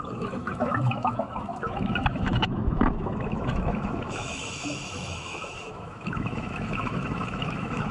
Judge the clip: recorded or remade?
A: remade